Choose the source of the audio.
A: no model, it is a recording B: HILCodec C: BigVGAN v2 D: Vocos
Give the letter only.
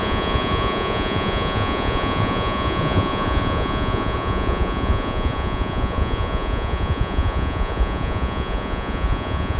D